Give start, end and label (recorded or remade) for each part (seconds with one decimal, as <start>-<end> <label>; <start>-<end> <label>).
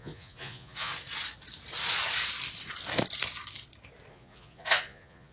0.0-0.9 remade; 0.9-4.1 recorded; 4.1-5.3 remade